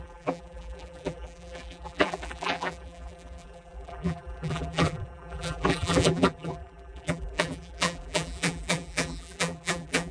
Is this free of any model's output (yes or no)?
no